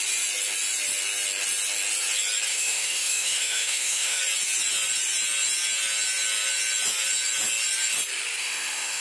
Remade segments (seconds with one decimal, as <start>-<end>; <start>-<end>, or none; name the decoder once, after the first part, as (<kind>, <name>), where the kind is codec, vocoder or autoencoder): 2.5-4.2 (autoencoder, DAC-VAE); 8.4-9.0